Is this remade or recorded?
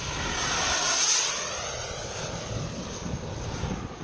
recorded